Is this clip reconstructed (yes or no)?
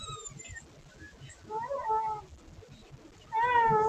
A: no